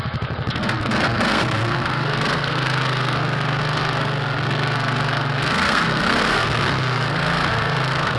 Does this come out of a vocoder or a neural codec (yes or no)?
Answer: yes